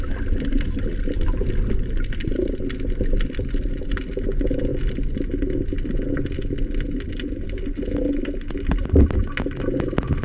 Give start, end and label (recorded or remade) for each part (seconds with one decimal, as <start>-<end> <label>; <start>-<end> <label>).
0.0-10.2 recorded

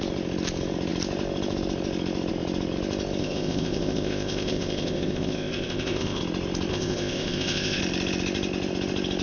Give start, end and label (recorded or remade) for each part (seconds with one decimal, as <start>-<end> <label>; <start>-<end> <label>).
0.0-3.2 recorded; 3.2-6.2 remade; 6.2-6.7 recorded; 6.7-7.8 remade; 7.8-9.2 recorded

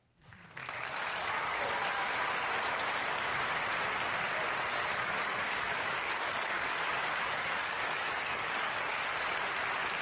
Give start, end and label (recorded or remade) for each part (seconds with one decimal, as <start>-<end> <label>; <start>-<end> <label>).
0.0-0.6 recorded; 0.6-1.6 remade; 1.6-4.8 recorded; 4.8-9.1 remade; 9.1-10.0 recorded